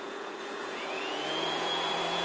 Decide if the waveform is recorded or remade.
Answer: remade